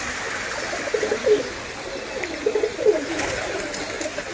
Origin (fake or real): real